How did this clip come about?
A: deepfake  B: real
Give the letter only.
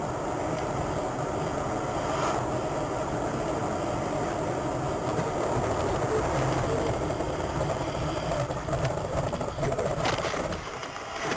B